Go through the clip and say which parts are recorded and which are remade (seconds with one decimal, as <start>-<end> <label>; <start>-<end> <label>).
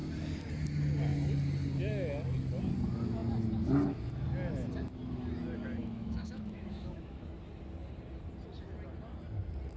0.0-5.8 recorded; 5.8-7.2 remade; 7.2-9.8 recorded